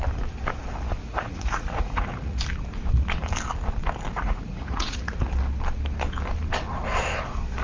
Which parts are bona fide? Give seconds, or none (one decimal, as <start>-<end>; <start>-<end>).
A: 0.0-1.0; 2.4-4.1; 5.3-7.6